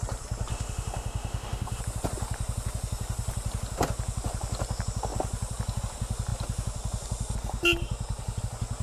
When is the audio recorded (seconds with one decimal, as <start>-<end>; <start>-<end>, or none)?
0.0-0.5; 1.8-8.8